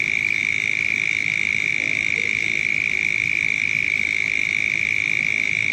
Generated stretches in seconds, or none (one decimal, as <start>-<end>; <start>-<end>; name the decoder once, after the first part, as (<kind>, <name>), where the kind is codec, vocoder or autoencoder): none